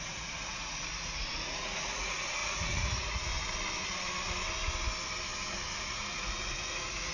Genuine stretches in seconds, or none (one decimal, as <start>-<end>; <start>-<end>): 3.3-5.8